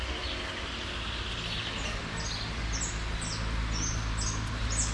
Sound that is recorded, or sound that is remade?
recorded